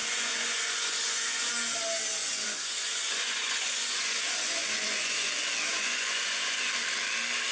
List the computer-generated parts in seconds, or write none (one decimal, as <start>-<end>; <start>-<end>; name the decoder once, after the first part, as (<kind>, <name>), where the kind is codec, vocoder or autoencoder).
0.0-1.5 (vocoder, Vocos); 2.2-5.3; 5.7-6.7